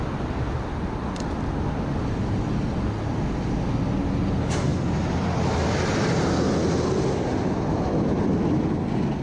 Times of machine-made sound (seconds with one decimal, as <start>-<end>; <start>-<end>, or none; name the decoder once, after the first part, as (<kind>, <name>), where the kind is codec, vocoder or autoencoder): none